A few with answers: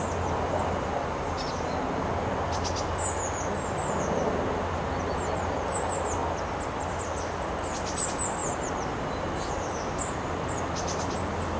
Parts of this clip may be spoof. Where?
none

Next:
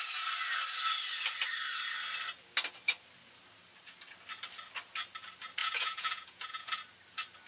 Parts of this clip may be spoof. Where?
5.6-6.8 (vocoder, Vocos)